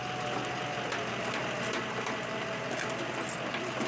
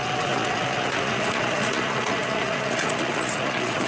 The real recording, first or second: first